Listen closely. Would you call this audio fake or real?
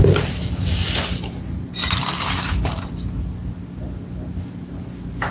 real